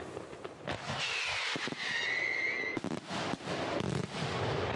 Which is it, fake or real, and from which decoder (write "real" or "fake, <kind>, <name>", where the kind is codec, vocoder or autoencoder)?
real